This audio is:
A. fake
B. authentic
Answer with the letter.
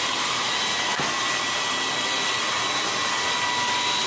B